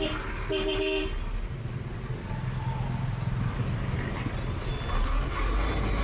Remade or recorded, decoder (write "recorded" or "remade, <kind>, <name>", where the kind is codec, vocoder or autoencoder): recorded